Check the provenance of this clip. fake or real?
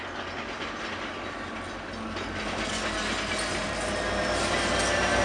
real